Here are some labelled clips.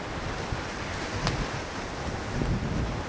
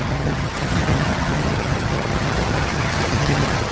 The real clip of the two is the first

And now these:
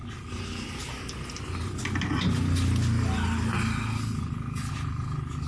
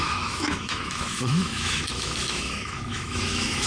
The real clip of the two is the first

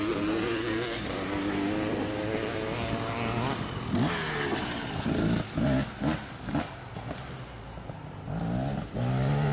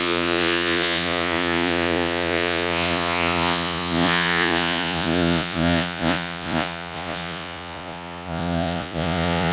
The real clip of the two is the first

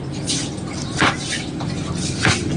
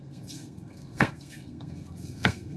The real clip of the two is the first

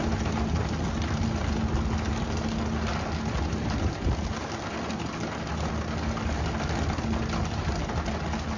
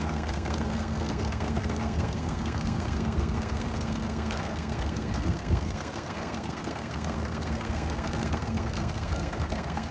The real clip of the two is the first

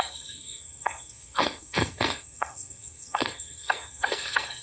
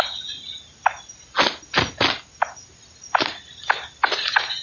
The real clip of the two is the second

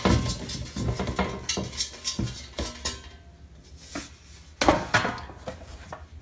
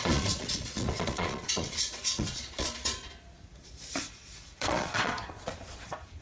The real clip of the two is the first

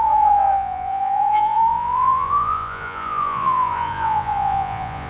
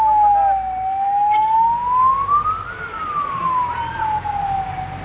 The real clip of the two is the second